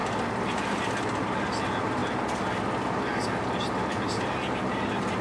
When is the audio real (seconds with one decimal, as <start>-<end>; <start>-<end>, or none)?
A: 0.0-5.2